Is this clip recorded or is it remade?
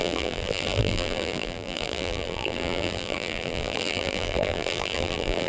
remade